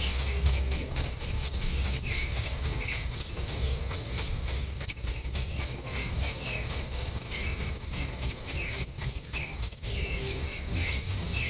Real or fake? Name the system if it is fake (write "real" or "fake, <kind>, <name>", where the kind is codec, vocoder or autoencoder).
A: fake, codec, DAC